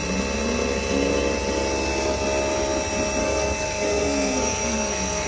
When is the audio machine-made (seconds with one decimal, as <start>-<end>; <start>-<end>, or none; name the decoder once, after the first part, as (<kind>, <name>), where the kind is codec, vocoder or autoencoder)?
3.2-5.3 (codec, SNAC)